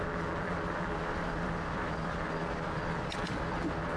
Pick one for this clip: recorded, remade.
recorded